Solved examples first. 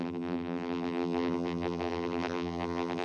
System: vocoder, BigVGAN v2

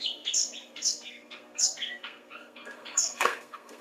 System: codec, SNAC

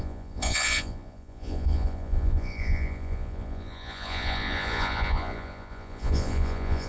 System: vocoder, Vocos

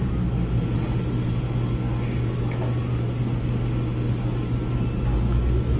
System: none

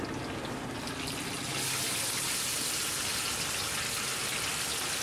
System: none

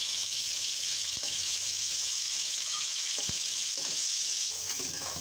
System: autoencoder, DAC-VAE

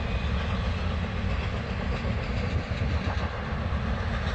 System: none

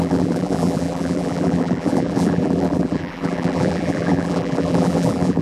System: vocoder, BigVGAN v2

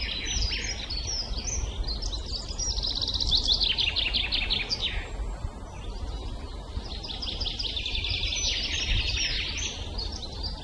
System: none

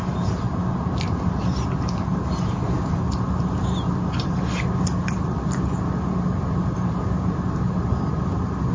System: none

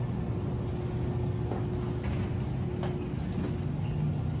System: none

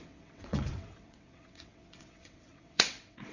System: vocoder, WaveNeXt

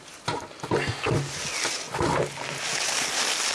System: none